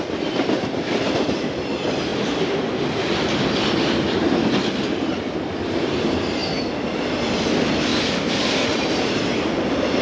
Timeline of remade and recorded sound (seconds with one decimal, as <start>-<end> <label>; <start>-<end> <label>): 0.0-7.9 recorded; 7.9-9.2 remade; 9.2-10.0 recorded